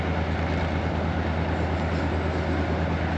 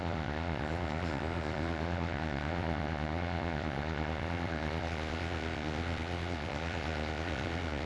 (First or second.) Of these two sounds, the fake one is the second